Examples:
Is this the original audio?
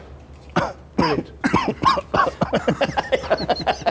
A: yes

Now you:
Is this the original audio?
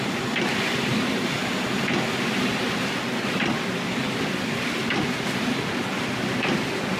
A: yes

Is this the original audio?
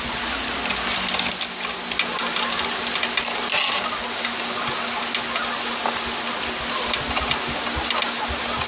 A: yes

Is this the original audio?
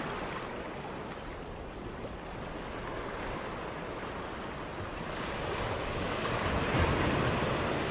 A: yes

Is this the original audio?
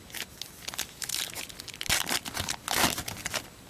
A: yes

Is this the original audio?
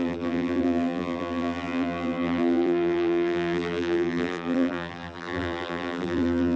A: no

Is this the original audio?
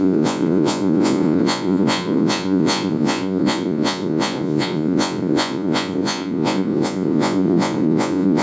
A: no